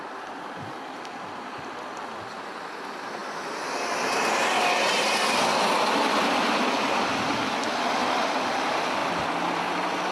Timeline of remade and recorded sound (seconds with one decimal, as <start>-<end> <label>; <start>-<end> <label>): 0.0-9.0 remade; 9.0-9.6 recorded; 9.6-10.1 remade